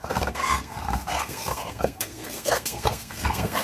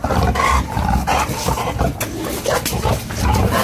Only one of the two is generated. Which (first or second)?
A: first